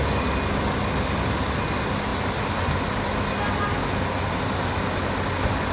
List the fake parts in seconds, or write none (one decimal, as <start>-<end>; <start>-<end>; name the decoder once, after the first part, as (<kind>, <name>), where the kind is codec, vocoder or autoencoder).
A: none